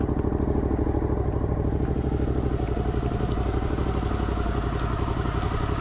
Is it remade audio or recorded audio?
recorded